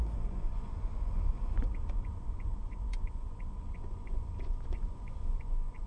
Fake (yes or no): yes